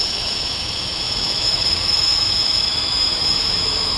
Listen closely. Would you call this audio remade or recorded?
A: remade